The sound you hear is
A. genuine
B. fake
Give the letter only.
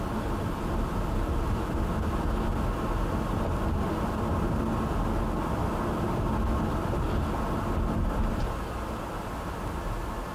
A